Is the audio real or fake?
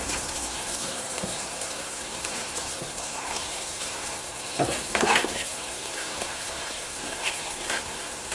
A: fake